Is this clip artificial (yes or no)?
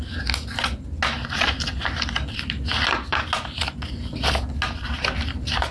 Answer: no